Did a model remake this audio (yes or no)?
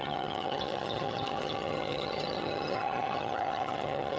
yes